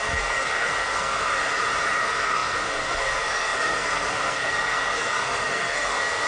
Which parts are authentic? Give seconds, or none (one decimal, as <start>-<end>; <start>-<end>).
1.3-2.0